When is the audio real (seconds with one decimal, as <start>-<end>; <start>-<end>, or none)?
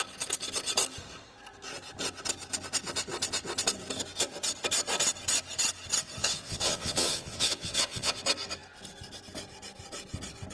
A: 0.0-6.2; 8.2-10.5